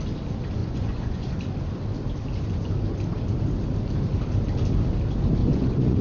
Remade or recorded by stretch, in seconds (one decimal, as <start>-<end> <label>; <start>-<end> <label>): 0.0-0.6 recorded; 0.6-1.3 remade; 1.3-5.4 recorded; 5.4-6.0 remade